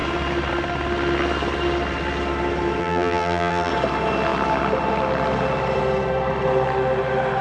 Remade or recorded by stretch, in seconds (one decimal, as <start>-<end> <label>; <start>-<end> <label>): 0.0-2.8 recorded; 2.8-3.7 remade; 3.7-7.4 recorded